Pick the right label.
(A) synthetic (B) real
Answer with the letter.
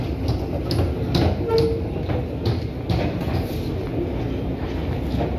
B